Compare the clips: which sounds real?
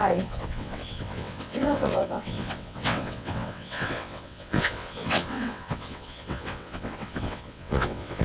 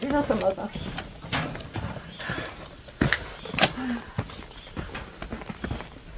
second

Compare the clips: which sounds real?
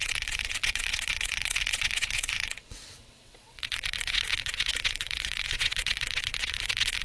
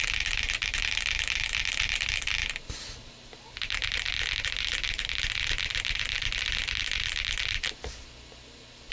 second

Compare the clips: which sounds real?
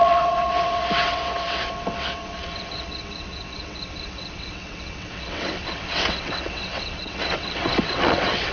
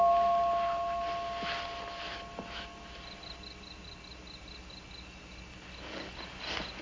second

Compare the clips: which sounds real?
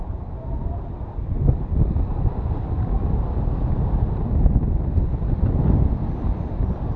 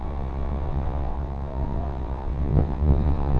first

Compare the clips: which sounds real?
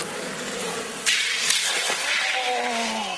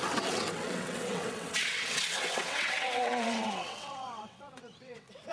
first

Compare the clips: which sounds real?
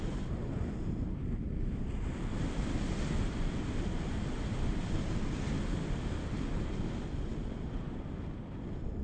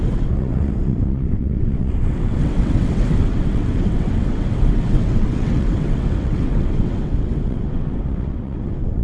first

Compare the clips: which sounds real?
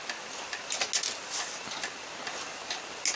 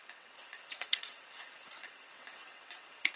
first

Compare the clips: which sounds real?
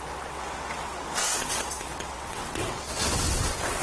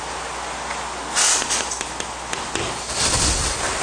second